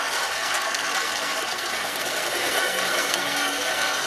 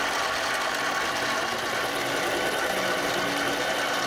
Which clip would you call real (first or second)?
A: second